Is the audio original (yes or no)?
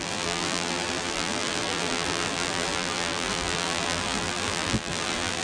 no